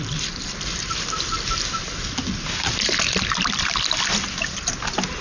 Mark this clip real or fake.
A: real